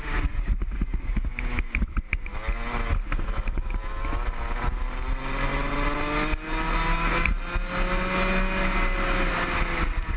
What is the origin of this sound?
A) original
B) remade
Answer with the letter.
A